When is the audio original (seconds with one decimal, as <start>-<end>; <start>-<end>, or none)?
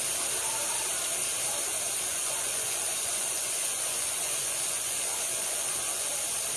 0.0-2.1; 6.1-6.6